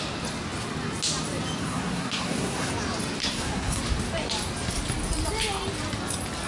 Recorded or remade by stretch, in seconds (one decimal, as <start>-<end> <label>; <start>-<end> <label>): 0.0-1.6 recorded; 1.6-2.7 remade; 2.7-3.2 recorded; 3.2-3.8 remade; 3.8-6.5 recorded